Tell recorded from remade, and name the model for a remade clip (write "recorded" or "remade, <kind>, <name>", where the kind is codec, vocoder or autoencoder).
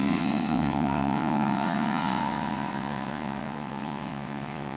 remade, vocoder, WaveNeXt